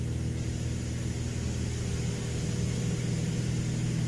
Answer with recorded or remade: recorded